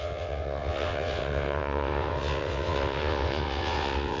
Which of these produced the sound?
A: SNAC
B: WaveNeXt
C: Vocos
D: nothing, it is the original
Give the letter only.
B